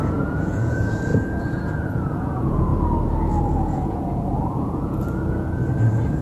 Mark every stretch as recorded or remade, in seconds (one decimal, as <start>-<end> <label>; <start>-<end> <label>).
0.0-2.7 remade; 2.7-3.4 recorded; 3.4-5.6 remade; 5.6-6.2 recorded